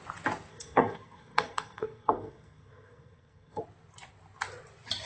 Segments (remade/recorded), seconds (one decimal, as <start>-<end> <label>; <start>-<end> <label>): 0.0-0.5 recorded; 0.5-3.6 remade; 3.6-5.1 recorded